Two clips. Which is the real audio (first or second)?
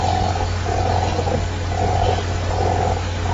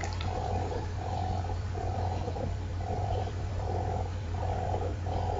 first